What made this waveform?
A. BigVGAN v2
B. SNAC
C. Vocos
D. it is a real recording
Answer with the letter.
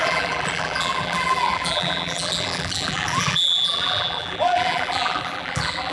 A